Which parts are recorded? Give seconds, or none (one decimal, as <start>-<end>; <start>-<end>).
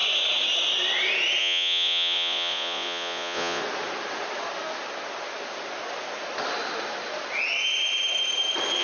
0.0-1.4; 3.6-8.8